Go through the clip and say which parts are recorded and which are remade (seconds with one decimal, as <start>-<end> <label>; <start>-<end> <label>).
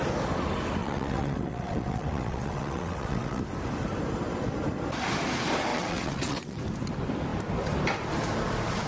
0.0-0.8 recorded; 0.8-3.4 remade; 3.4-5.7 recorded; 5.7-6.6 remade; 6.6-8.9 recorded